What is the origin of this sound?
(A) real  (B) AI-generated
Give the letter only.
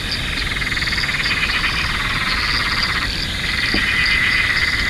A